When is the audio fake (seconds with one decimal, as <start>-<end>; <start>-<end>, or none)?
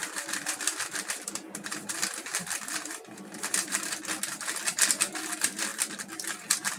0.0-1.3; 2.3-3.9; 5.7-6.8